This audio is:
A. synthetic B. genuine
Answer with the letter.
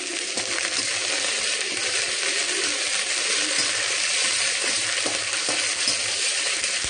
B